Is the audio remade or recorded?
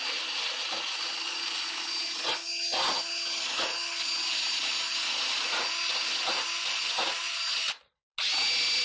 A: recorded